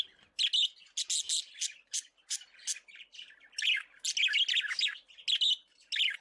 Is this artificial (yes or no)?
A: no